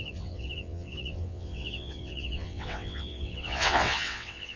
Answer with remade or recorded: remade